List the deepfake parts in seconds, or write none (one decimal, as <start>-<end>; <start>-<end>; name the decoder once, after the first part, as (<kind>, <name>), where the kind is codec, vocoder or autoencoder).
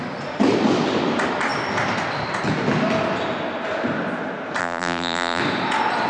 4.6-5.4 (vocoder, BigVGAN v2)